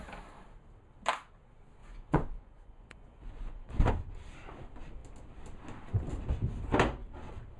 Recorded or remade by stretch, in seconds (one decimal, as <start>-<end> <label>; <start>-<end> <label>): 0.0-1.8 recorded; 1.8-3.9 remade; 3.9-7.6 recorded